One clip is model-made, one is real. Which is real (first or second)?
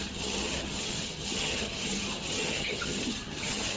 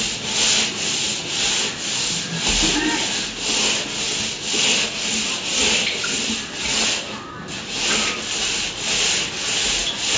second